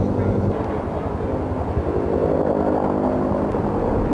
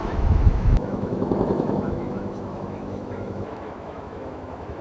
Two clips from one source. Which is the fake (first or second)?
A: second